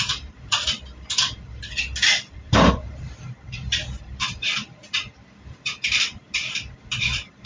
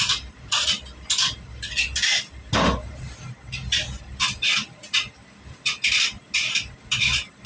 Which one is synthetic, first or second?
first